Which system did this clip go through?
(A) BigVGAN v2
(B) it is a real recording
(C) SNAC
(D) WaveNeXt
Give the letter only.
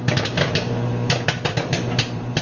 A